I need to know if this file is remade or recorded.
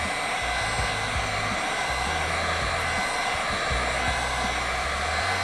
recorded